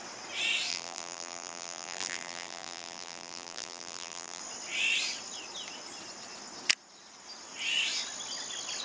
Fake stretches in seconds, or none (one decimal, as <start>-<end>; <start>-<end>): 0.7-4.4